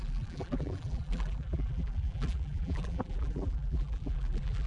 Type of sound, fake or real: fake